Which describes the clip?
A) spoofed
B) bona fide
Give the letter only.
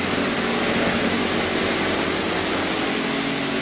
B